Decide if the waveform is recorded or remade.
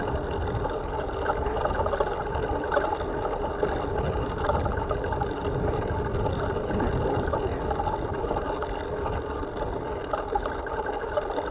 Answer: recorded